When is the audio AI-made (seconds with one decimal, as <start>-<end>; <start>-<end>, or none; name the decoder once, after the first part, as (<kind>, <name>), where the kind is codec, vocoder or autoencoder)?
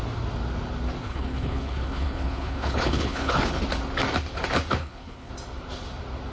1.0-3.6 (codec, HILCodec); 4.8-5.3